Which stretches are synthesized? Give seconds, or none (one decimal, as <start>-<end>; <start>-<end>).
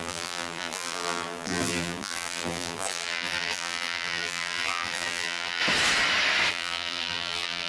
0.0-5.6; 6.5-7.7